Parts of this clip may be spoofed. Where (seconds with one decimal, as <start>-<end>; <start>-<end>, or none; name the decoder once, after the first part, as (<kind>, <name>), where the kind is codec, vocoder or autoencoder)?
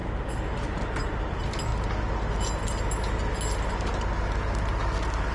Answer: none